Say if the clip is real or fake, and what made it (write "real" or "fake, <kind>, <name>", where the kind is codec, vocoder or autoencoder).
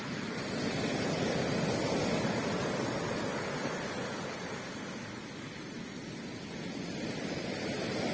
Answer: real